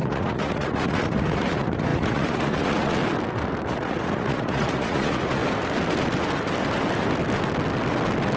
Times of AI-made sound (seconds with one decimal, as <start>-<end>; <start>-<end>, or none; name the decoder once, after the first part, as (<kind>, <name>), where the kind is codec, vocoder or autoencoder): 0.0-3.0 (vocoder, Vocos); 3.7-5.4